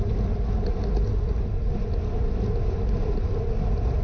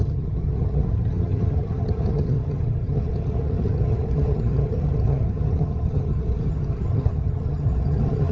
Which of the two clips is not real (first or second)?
second